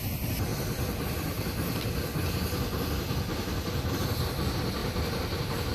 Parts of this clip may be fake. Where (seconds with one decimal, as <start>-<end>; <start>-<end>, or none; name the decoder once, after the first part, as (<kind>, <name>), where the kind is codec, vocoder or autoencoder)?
4.8-5.7 (vocoder, BigVGAN v2)